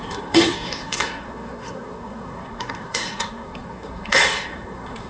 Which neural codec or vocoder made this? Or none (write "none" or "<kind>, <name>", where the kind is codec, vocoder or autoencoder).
codec, SNAC